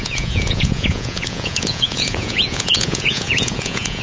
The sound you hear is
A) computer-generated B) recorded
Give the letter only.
A